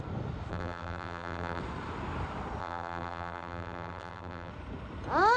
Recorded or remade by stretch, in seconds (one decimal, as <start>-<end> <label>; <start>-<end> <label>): 0.0-0.5 recorded; 0.5-1.6 remade; 1.6-2.6 recorded; 2.6-4.5 remade; 4.5-5.4 recorded